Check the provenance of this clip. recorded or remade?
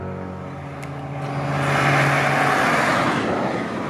recorded